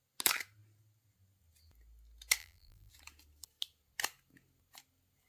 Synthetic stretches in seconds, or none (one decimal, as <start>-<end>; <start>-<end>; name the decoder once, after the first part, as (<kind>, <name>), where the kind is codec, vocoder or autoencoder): 2.4-2.9 (vocoder, BigVGAN v2)

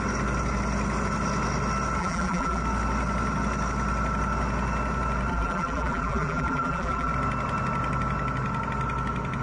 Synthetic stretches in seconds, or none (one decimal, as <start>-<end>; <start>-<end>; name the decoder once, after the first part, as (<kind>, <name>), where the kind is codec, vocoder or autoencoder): 2.0-2.6 (vocoder, BigVGAN v2); 5.3-7.1

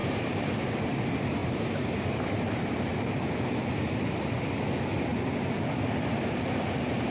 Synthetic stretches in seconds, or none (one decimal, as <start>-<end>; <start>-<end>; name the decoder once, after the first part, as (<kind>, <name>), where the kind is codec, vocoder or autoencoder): 0.0-0.6 (vocoder, BigVGAN v2); 1.4-4.0